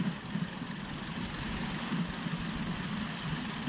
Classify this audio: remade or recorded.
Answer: recorded